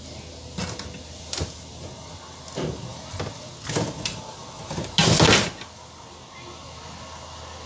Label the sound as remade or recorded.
recorded